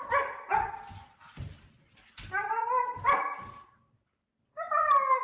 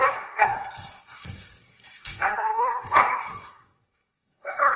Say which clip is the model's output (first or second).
second